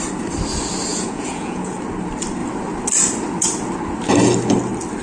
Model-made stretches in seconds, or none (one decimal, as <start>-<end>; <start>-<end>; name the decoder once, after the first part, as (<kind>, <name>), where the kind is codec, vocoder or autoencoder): 0.9-1.8 (vocoder, Vocos)

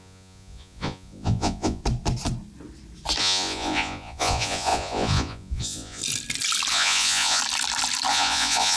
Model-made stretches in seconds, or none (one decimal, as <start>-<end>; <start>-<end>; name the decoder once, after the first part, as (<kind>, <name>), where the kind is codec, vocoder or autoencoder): 0.0-1.8 (vocoder, Vocos); 3.2-6.0; 6.7-7.4; 8.1-8.8

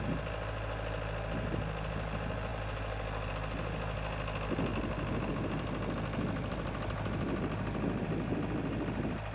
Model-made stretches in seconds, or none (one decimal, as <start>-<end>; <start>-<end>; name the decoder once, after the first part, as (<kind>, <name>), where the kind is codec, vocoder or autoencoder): none

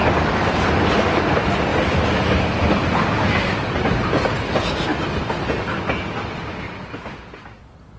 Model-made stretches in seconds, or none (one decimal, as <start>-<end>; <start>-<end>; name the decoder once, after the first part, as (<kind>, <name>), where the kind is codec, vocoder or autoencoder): none

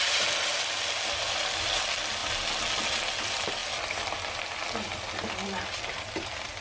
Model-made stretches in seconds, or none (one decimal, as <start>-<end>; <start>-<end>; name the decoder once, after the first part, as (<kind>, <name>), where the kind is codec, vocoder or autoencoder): none

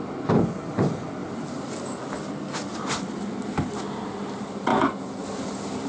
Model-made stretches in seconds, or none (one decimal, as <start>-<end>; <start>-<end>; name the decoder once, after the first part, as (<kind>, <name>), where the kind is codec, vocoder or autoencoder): 4.7-5.2 (vocoder, Vocos)

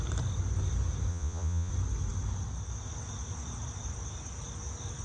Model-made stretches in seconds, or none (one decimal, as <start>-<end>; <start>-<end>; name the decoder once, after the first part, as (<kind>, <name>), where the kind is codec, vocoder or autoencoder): 1.1-1.7 (vocoder, Vocos)